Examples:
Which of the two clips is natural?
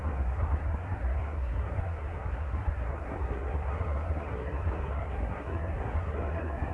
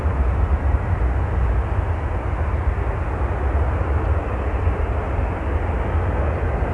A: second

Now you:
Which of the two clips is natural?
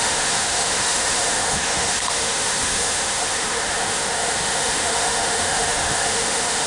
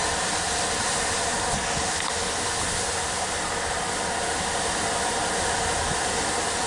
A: second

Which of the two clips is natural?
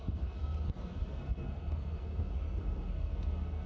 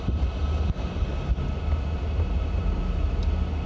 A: second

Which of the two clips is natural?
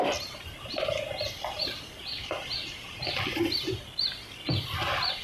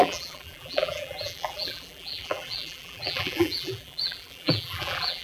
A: first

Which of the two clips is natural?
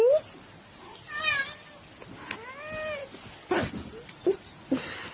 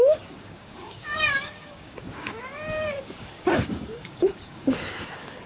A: first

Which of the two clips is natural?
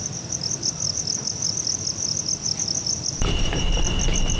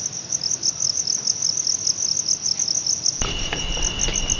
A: second